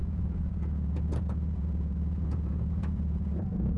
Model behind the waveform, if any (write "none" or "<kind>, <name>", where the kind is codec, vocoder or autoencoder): vocoder, Vocos